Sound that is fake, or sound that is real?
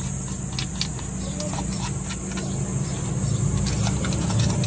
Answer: real